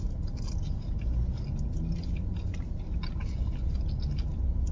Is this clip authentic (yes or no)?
yes